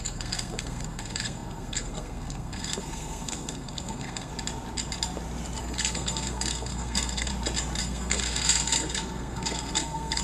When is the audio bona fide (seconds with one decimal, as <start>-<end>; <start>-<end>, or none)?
4.3-5.6; 7.3-7.8